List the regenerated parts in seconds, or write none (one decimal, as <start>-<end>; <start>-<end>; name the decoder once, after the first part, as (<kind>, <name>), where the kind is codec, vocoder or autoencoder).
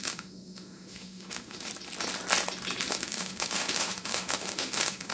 0.0-1.7 (autoencoder, DAC-VAE); 2.9-5.1